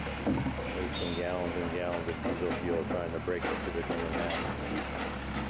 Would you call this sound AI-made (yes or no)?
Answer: no